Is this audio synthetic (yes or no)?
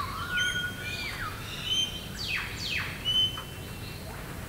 no